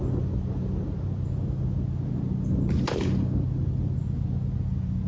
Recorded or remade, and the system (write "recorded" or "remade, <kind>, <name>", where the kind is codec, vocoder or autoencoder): recorded